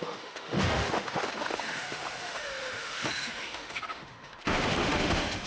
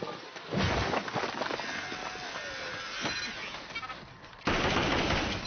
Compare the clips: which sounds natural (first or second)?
second